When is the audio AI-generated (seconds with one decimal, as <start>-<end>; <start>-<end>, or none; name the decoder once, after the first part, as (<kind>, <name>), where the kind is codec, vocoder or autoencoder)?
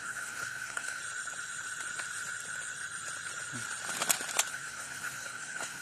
0.0-1.0 (codec, SNAC); 4.5-5.8